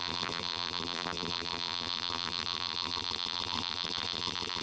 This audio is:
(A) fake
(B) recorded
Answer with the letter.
A